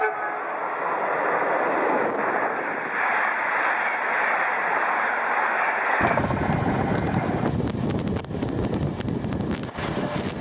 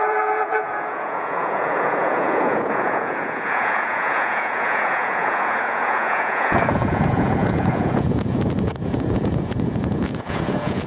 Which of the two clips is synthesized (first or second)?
second